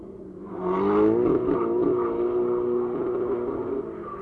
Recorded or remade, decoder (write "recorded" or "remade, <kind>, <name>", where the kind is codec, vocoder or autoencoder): recorded